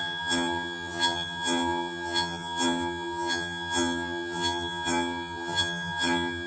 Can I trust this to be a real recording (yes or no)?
no